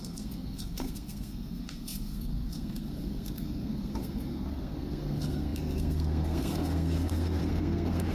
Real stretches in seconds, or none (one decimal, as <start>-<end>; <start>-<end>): none

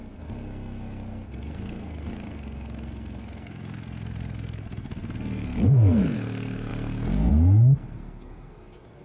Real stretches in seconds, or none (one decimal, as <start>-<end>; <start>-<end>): none

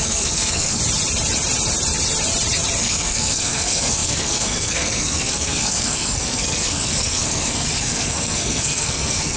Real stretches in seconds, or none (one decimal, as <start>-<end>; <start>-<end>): 0.8-2.8

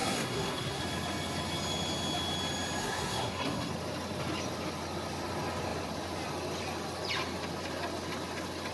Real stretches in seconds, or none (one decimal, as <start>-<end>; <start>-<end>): 0.8-2.8; 3.7-8.7

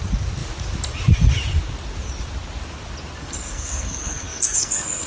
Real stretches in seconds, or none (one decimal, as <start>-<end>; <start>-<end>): 0.0-3.2